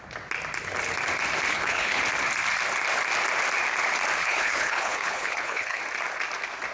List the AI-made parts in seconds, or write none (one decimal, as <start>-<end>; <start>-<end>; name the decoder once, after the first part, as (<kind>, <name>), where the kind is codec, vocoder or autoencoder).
1.5-2.0 (codec, HILCodec); 4.2-5.8